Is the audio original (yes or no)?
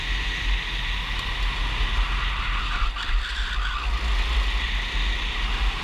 yes